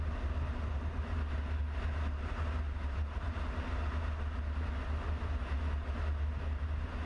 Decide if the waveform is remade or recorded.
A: recorded